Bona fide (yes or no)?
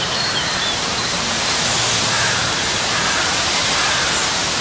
no